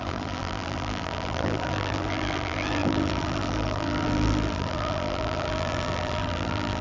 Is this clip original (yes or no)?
no